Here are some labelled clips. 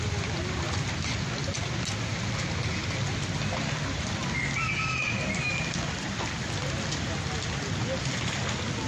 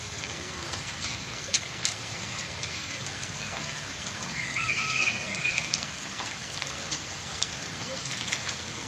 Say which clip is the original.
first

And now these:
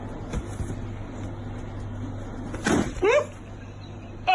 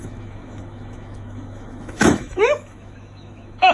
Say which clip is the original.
first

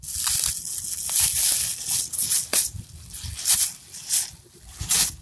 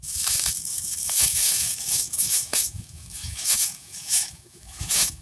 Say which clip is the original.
first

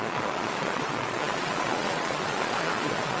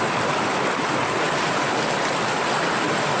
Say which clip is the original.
second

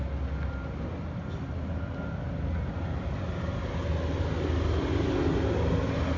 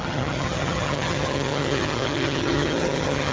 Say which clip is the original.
first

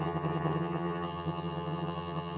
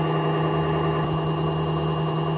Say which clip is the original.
second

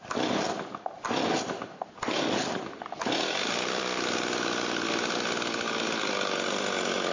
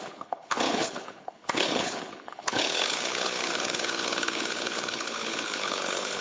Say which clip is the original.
first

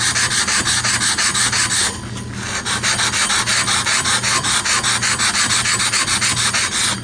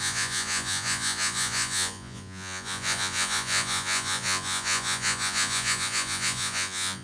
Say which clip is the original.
first